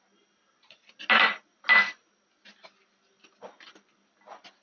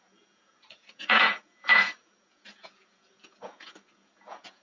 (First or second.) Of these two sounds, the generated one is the second